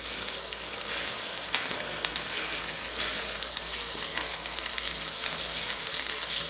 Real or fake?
fake